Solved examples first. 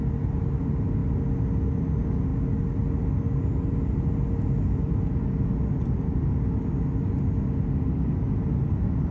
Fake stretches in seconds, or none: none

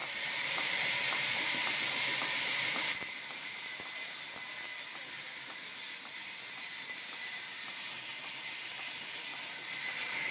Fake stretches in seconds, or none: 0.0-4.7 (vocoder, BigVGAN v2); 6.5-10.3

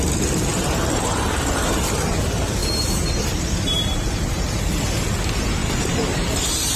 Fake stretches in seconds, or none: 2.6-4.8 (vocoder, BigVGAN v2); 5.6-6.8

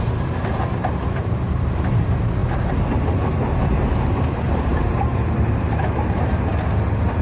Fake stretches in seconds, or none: 0.0-6.5 (vocoder, BigVGAN v2)

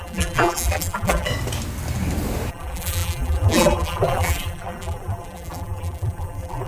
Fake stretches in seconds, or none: 0.0-1.3 (vocoder, BigVGAN v2); 2.5-6.7

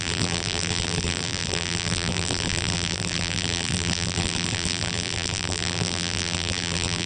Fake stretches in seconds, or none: 0.0-7.1 (vocoder, BigVGAN v2)